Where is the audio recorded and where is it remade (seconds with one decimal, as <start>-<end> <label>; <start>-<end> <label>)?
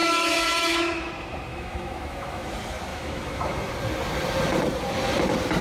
0.0-1.1 remade; 1.1-1.5 recorded; 1.5-2.5 remade; 2.5-2.9 recorded; 2.9-3.7 remade; 3.7-5.6 recorded